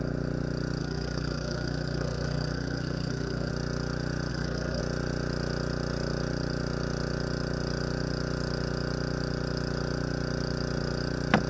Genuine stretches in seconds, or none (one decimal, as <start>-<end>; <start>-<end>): 0.0-0.8; 3.5-4.3; 4.8-11.5